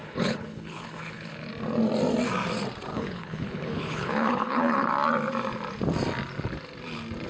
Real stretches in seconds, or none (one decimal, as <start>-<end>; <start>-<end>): 1.5-2.9; 4.9-7.3